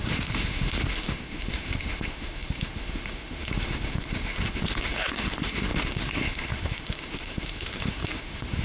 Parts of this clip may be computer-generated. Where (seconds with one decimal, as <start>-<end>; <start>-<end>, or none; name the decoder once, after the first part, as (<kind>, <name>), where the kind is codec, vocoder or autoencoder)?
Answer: 0.0-8.6 (autoencoder, DAC-VAE)